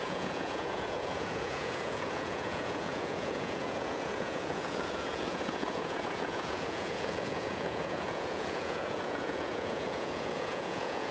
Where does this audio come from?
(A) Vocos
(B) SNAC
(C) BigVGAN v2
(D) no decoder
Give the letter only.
A